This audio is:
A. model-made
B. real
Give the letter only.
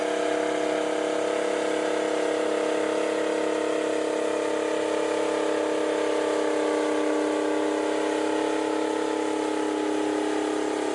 B